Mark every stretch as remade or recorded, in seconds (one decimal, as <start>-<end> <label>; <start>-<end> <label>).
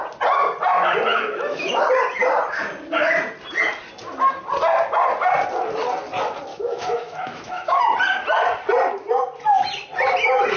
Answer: 0.0-1.1 recorded; 1.1-1.8 remade; 1.8-6.5 recorded; 6.5-7.8 remade; 7.8-10.6 recorded